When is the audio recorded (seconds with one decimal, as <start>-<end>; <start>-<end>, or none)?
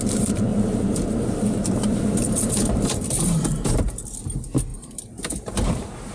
0.0-0.5; 4.2-4.7